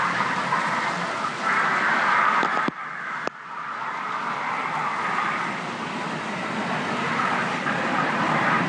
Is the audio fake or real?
real